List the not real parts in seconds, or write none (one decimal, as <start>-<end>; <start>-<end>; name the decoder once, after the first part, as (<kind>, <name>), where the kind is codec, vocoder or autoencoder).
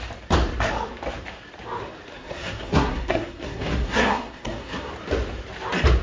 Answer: 2.1-4.9 (codec, SNAC)